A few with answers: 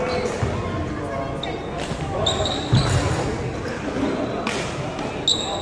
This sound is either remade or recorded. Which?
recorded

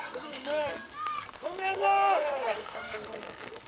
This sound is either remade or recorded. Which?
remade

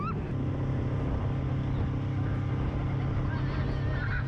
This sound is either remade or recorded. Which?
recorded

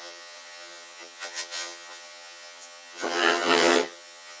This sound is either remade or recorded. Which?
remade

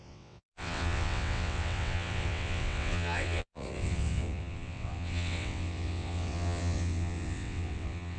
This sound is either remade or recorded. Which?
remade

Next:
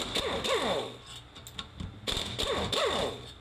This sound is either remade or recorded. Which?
recorded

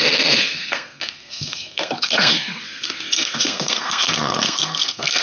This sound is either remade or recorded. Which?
remade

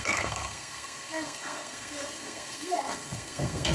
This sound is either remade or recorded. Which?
remade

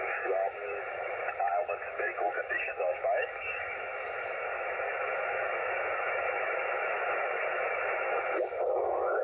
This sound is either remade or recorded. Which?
remade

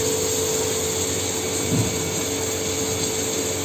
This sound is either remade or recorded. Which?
recorded